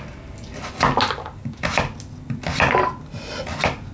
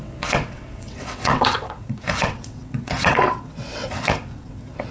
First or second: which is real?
first